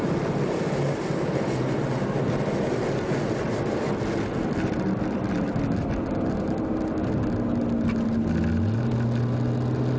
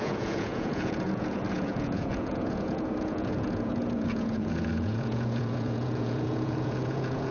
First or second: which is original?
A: first